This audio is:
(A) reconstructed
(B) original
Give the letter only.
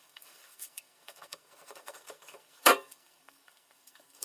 A